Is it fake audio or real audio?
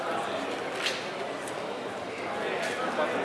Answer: real